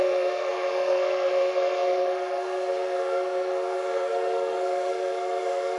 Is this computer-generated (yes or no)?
yes